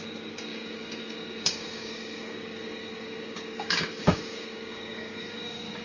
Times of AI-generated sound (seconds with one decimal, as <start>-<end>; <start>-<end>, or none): 0.0-5.8